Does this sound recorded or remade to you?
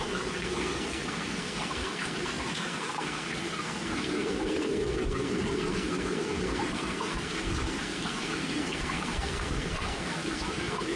remade